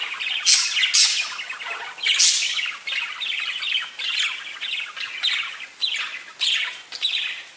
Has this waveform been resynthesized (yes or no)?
no